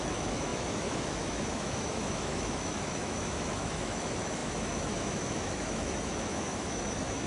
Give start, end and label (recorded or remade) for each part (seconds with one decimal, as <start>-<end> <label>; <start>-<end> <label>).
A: 0.0-7.3 remade